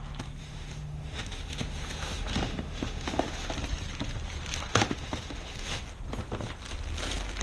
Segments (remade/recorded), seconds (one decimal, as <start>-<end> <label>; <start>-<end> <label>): 0.0-0.4 recorded; 0.4-3.5 remade; 3.5-4.7 recorded; 4.7-5.8 remade; 5.8-7.4 recorded

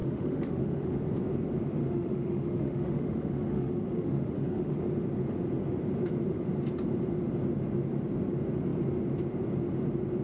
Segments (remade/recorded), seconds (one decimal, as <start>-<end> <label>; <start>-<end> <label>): 0.0-1.0 remade; 1.0-1.8 recorded; 1.8-4.8 remade; 4.8-10.2 recorded

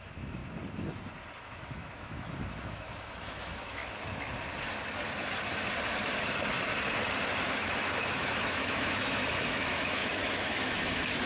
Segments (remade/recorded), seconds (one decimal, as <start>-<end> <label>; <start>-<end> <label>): 0.0-0.4 remade; 0.4-1.4 recorded; 1.4-3.8 remade; 3.8-7.8 recorded; 7.8-11.3 remade

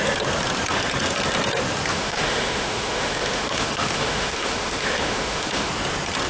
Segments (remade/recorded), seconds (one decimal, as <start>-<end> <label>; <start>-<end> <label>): 0.0-1.9 recorded; 1.9-5.7 remade; 5.7-6.3 recorded

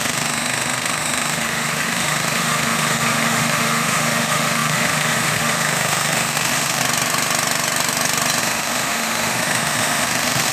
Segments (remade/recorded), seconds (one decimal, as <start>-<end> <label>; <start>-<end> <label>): 0.0-6.8 remade; 6.8-8.4 recorded; 8.4-10.5 remade

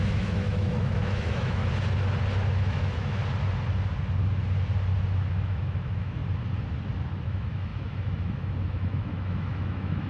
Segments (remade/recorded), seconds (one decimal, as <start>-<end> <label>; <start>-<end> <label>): 0.0-1.6 remade; 1.6-2.6 recorded; 2.6-3.2 remade; 3.2-5.3 recorded; 5.3-6.2 remade; 6.2-7.2 recorded; 7.2-10.1 remade

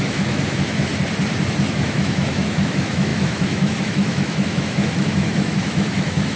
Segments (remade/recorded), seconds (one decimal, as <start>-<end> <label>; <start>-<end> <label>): 0.0-0.9 remade; 0.9-1.6 recorded; 1.6-6.4 remade

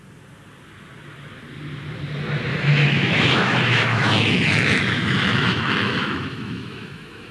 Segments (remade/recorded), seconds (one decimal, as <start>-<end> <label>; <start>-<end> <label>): 0.0-2.5 recorded; 2.5-7.3 remade